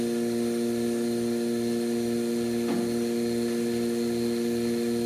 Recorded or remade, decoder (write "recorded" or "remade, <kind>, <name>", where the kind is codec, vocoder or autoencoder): recorded